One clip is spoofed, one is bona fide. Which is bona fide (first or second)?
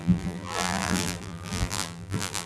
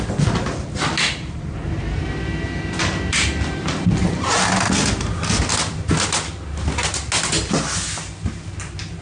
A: second